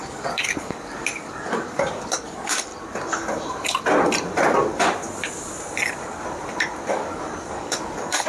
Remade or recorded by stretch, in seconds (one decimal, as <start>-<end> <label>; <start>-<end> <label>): 0.0-2.7 remade; 2.7-6.9 recorded; 6.9-8.3 remade